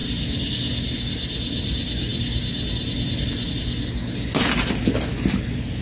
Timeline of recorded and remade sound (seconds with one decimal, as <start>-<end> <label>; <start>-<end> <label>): 0.0-5.8 recorded